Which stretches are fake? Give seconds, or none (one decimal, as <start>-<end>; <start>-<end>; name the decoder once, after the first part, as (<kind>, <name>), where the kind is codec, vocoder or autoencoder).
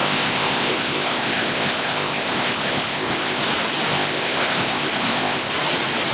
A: 0.0-3.4 (codec, ZipCodec); 3.9-5.5